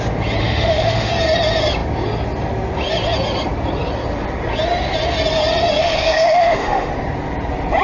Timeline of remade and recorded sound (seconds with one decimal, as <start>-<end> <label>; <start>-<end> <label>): 0.0-0.4 recorded; 0.4-1.1 remade; 1.1-5.8 recorded; 5.8-6.9 remade; 6.9-7.8 recorded